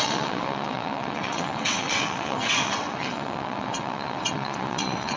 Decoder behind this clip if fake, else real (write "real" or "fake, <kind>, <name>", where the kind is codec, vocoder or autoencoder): fake, vocoder, WaveNeXt